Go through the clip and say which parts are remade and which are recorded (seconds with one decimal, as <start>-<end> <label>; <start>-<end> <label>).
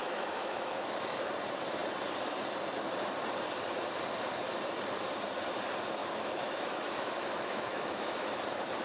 0.0-1.3 remade; 1.3-6.0 recorded; 6.0-8.4 remade; 8.4-8.8 recorded